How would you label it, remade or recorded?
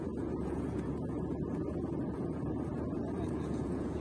remade